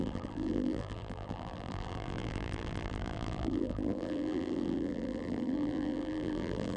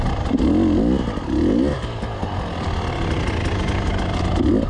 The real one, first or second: second